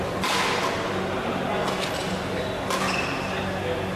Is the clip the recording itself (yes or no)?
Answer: yes